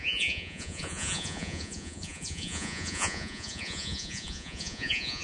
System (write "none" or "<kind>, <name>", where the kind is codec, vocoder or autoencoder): vocoder, Vocos